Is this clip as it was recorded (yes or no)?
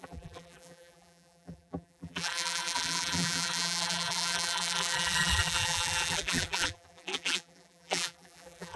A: no